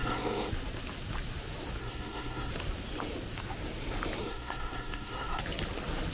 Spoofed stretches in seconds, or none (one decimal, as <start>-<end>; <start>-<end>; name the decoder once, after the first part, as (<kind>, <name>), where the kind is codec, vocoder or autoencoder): 0.0-0.5 (codec, SNAC); 1.8-2.5; 4.2-5.4